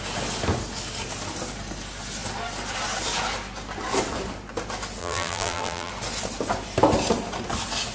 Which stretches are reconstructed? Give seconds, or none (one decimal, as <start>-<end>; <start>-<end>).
5.0-5.9